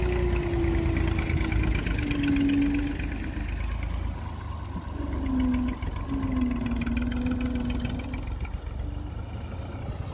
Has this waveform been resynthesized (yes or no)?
no